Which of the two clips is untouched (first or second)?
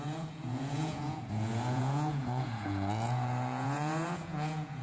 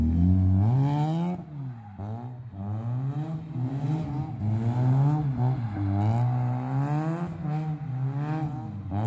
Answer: second